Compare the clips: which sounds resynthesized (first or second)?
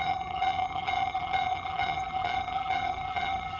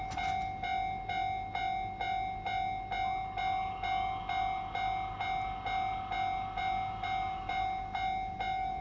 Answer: first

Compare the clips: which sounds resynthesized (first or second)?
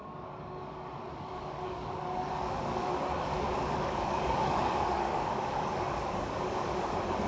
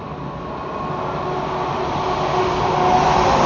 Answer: first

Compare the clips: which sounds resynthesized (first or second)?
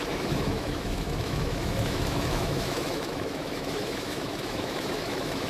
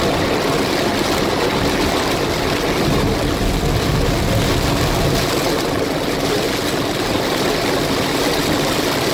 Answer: first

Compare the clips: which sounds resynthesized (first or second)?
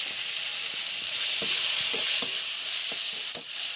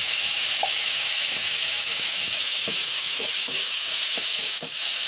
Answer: second